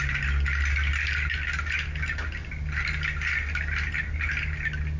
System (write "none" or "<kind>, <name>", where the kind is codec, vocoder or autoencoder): none